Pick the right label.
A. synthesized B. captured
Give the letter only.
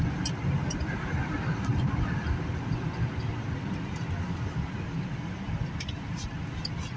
B